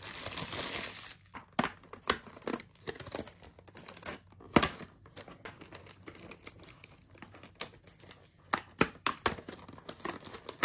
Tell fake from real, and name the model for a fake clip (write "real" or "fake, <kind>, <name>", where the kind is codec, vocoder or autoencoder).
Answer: real